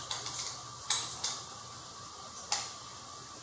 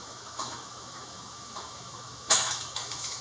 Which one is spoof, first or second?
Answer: second